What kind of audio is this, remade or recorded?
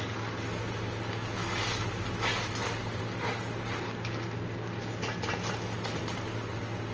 recorded